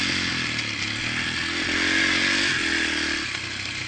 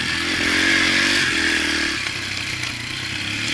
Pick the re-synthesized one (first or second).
second